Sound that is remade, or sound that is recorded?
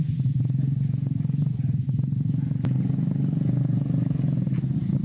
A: recorded